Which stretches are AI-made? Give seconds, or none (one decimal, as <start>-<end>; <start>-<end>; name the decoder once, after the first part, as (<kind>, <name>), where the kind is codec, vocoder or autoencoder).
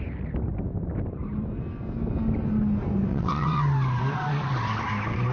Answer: 3.1-3.6 (vocoder, WaveNeXt)